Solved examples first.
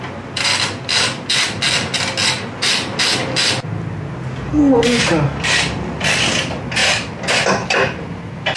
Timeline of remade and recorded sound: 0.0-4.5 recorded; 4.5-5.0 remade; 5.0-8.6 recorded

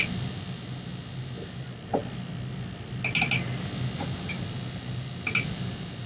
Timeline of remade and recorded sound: 0.0-6.1 recorded

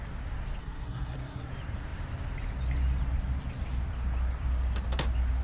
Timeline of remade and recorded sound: 0.0-0.6 recorded; 0.6-1.5 remade; 1.5-5.4 recorded

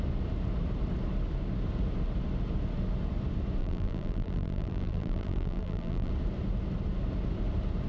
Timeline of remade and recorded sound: 0.0-3.6 recorded; 3.6-6.1 remade; 6.1-7.9 recorded

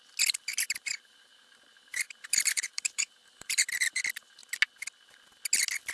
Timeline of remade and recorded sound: 0.0-0.5 recorded; 0.5-4.0 remade; 4.0-5.9 recorded

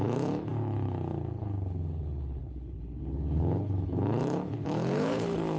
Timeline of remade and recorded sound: 0.0-5.6 remade

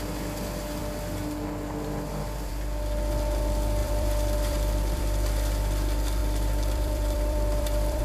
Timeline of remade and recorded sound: 0.0-3.8 recorded; 3.8-5.0 remade; 5.0-6.2 recorded; 6.2-8.0 remade